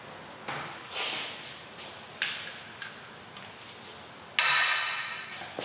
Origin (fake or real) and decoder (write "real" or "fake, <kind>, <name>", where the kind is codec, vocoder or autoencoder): real